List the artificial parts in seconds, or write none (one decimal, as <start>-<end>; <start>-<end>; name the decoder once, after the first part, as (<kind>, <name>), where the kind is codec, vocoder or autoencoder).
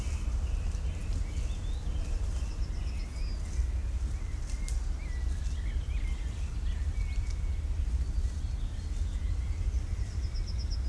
none